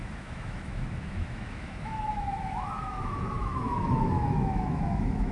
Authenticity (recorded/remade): remade